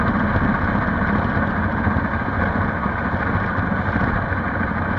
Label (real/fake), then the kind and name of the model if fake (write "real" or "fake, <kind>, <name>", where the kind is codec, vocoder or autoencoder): real